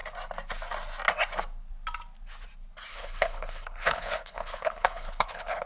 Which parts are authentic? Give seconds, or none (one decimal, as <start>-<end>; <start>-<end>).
0.0-2.9